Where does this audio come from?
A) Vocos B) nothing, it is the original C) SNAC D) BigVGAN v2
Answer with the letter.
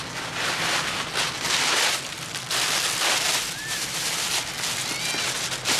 B